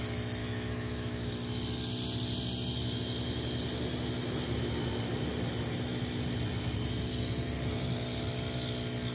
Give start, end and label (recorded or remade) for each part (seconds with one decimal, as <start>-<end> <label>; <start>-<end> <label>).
0.0-0.4 recorded; 0.4-1.3 remade; 1.3-9.1 recorded